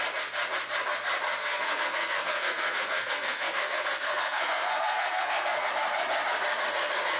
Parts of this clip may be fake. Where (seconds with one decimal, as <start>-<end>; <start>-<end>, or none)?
1.4-5.7

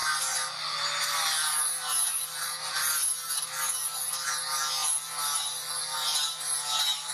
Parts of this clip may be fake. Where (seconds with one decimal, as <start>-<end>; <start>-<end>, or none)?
none

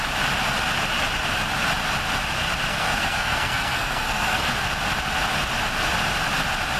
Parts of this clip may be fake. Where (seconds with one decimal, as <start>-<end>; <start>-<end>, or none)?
2.7-4.5

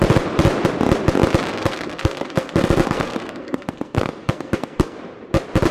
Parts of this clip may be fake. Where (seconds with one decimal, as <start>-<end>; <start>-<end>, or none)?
1.6-5.0

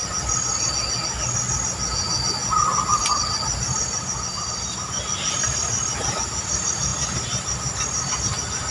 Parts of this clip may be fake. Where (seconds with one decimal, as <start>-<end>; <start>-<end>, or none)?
none